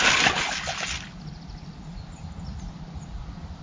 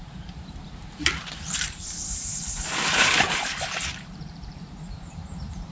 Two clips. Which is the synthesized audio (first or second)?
second